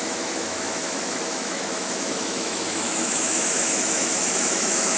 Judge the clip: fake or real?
fake